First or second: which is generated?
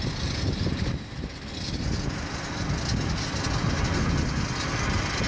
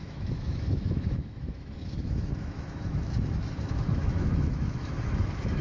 second